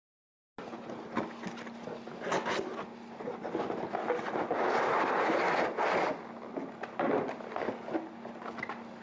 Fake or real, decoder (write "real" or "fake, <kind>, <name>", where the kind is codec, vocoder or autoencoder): real